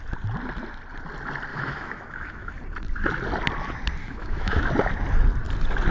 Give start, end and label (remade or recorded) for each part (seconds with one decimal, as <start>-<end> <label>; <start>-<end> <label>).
0.0-1.5 recorded; 1.5-2.5 remade; 2.5-4.0 recorded; 4.0-4.7 remade; 4.7-5.9 recorded